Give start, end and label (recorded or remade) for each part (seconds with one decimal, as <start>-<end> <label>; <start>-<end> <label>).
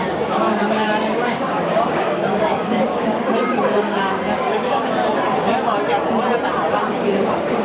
0.0-5.1 remade; 5.1-6.9 recorded; 6.9-7.6 remade